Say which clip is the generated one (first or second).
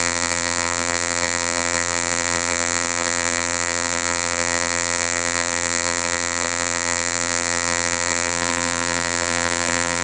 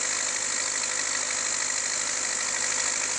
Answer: first